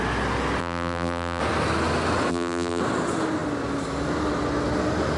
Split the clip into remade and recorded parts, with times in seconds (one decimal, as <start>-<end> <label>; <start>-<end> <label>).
0.0-0.6 recorded; 0.6-1.4 remade; 1.4-2.3 recorded; 2.3-2.8 remade; 2.8-5.2 recorded

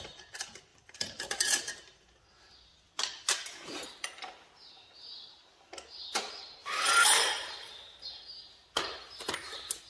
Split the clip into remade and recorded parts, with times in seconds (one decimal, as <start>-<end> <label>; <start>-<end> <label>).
0.0-0.7 recorded; 0.7-2.2 remade; 2.2-6.6 recorded; 6.6-8.2 remade; 8.2-9.9 recorded

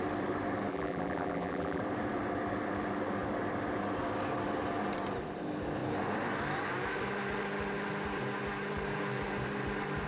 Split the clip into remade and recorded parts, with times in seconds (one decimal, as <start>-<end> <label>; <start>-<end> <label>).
0.0-0.7 recorded; 0.7-1.8 remade; 1.8-10.1 recorded

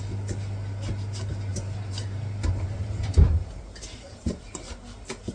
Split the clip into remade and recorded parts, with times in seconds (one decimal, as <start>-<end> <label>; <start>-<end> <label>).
0.0-1.5 recorded; 1.5-4.7 remade; 4.7-5.3 recorded

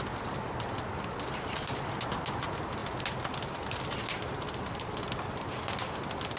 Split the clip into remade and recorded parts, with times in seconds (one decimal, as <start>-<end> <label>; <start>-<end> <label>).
0.0-6.4 recorded

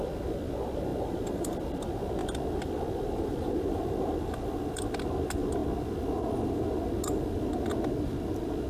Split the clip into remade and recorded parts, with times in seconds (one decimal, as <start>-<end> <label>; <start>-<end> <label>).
0.0-0.9 recorded; 0.9-1.8 remade; 1.8-2.2 recorded; 2.2-4.9 remade; 4.9-8.7 recorded

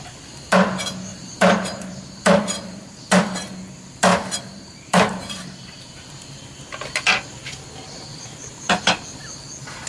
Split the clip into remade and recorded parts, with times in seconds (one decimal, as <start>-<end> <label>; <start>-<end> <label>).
0.0-1.1 recorded; 1.1-3.0 remade; 3.0-4.1 recorded; 4.1-6.6 remade; 6.6-8.1 recorded; 8.1-8.9 remade; 8.9-9.9 recorded